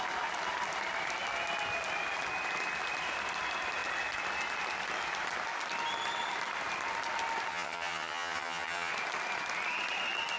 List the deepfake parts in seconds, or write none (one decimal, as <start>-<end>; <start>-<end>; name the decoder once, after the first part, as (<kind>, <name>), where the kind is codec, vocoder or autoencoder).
7.5-8.9 (vocoder, HiFi-GAN)